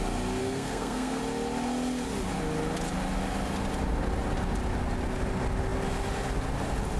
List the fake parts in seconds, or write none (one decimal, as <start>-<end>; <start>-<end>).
0.4-1.2